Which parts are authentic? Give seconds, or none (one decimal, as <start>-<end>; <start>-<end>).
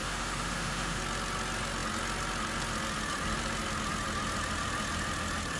1.0-5.6